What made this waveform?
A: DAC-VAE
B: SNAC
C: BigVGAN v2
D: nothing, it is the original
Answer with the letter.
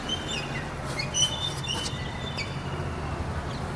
D